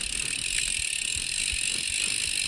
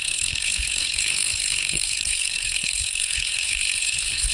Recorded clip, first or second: first